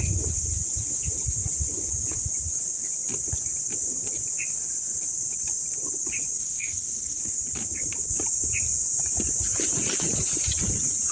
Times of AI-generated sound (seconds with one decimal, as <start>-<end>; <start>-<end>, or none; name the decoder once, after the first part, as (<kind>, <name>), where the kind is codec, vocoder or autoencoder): 6.4-7.2 (codec, SNAC)